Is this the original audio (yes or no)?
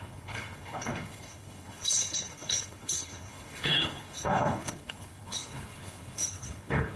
no